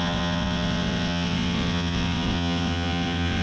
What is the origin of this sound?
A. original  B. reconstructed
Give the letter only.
B